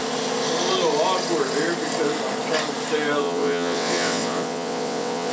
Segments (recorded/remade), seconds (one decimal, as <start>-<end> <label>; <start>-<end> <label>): 0.0-3.2 recorded; 3.2-5.3 remade